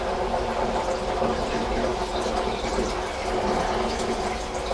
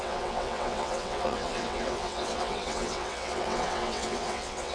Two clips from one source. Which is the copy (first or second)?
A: second